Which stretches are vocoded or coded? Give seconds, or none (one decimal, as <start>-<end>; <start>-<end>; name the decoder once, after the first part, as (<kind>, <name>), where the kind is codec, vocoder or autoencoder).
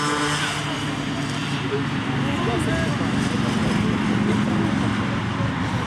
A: 3.6-5.9 (vocoder, BigVGAN v2)